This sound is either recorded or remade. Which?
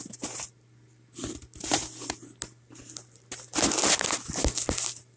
recorded